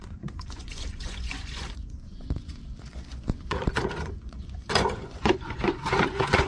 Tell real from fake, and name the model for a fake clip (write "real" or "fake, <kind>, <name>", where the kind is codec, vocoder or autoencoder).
fake, vocoder, Vocos